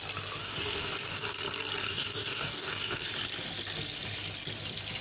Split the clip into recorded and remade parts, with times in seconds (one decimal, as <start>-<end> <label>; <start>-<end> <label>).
0.0-0.4 recorded; 0.4-1.2 remade; 1.2-1.9 recorded; 1.9-3.1 remade; 3.1-5.0 recorded